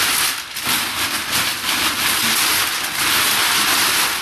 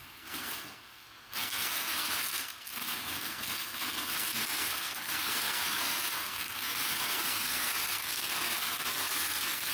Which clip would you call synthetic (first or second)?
second